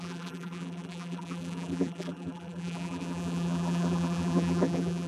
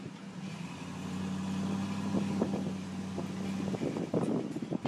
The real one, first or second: second